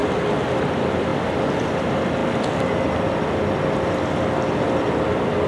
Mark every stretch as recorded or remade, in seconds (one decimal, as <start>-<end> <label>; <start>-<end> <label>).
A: 0.0-5.5 recorded